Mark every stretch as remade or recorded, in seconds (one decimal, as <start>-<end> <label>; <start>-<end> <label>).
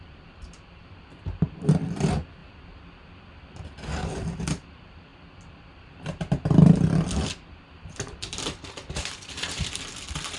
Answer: 0.0-2.4 remade; 2.4-4.4 recorded; 4.4-10.4 remade